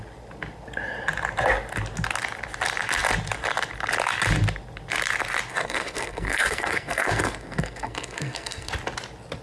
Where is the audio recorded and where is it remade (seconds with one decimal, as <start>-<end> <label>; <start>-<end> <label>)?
0.0-5.5 recorded; 5.5-8.7 remade; 8.7-9.4 recorded